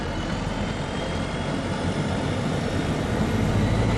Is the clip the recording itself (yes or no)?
no